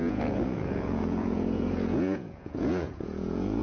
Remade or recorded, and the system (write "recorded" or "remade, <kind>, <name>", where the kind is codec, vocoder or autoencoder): remade, vocoder, Vocos